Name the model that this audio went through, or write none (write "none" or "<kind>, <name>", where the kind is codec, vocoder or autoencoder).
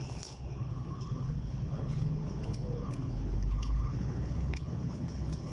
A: codec, HILCodec